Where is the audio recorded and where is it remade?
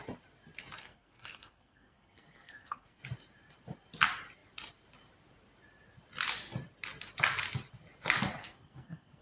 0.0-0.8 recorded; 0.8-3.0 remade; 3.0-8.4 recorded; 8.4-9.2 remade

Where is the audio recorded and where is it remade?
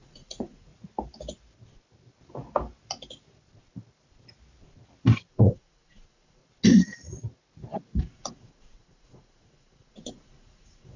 0.0-0.7 remade; 0.7-5.3 recorded; 5.3-6.4 remade; 6.4-8.0 recorded; 8.0-11.0 remade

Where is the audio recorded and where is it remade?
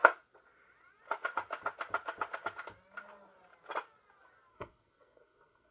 0.0-4.5 recorded; 4.5-5.7 remade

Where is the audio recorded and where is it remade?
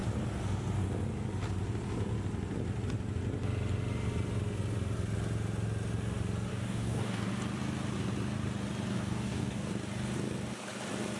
0.0-6.5 recorded; 6.5-7.3 remade; 7.3-8.9 recorded; 8.9-9.7 remade; 9.7-11.2 recorded